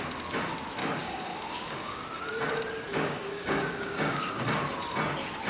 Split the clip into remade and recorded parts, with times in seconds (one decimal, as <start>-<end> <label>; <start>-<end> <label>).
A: 0.0-0.8 recorded; 0.8-2.0 remade; 2.0-2.9 recorded; 2.9-4.4 remade; 4.4-5.5 recorded